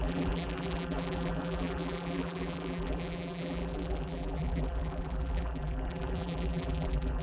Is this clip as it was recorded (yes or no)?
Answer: no